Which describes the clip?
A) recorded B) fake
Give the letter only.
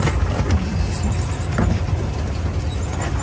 A